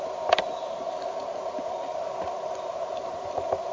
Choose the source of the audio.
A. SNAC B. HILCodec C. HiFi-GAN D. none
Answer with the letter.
D